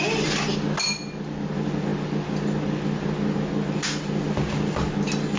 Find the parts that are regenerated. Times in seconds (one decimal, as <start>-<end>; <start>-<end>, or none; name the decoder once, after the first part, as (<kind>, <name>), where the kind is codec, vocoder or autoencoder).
none